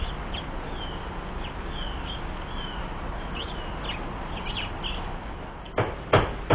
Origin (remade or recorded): recorded